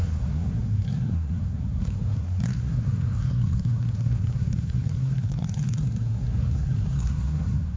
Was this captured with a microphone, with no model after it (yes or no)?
no